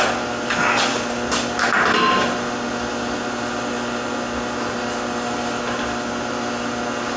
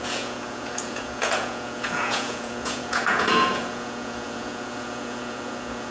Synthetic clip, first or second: second